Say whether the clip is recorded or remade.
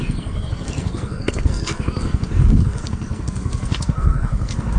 remade